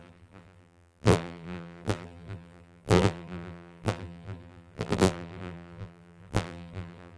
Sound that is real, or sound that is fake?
fake